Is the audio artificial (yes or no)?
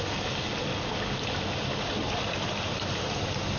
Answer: no